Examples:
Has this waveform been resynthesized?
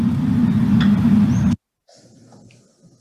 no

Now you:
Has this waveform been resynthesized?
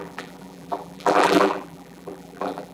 yes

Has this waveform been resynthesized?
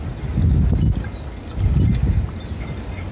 no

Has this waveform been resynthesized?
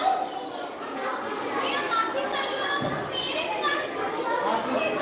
no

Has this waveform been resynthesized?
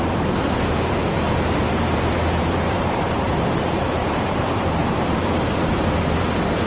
yes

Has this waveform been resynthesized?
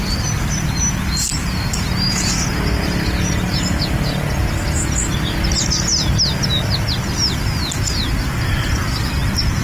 no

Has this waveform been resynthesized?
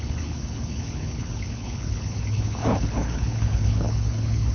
yes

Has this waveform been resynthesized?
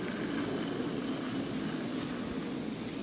no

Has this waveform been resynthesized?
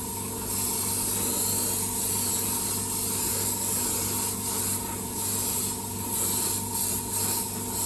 no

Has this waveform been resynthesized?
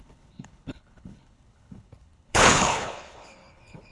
yes